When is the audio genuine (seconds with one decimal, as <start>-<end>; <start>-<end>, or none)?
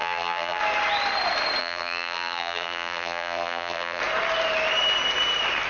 0.6-1.6; 4.0-5.7